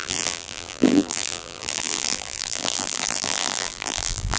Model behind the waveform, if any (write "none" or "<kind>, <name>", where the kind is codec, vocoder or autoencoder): vocoder, BigVGAN v2